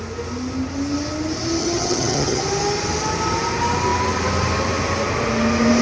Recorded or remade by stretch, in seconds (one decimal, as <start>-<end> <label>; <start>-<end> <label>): 0.0-1.6 recorded; 1.6-2.4 remade; 2.4-5.8 recorded